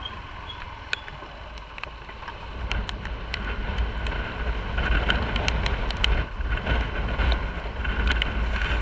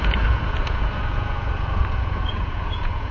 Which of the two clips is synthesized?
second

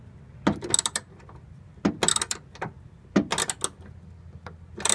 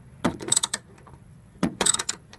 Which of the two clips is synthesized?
second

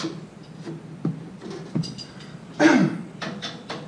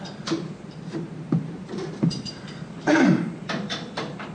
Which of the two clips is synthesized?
second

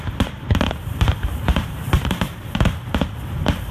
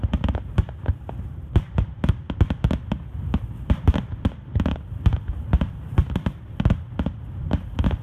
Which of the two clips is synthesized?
first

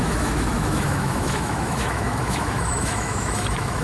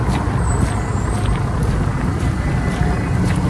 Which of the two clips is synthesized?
first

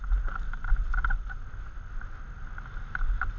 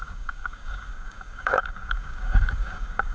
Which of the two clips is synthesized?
second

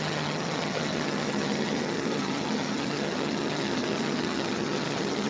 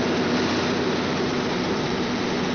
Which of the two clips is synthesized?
first